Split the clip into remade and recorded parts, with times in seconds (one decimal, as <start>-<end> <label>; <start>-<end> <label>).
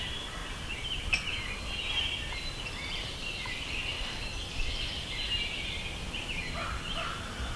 0.0-0.4 remade; 0.4-2.5 recorded; 2.5-3.8 remade; 3.8-4.5 recorded; 4.5-7.6 remade